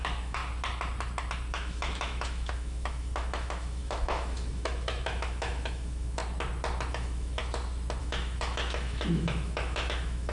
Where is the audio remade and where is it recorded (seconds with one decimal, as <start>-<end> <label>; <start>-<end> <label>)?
0.0-0.4 remade; 0.4-1.5 recorded; 1.5-6.2 remade; 6.2-6.9 recorded; 6.9-7.4 remade; 7.4-8.0 recorded; 8.0-10.3 remade